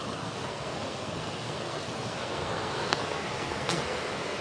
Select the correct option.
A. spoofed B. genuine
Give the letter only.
A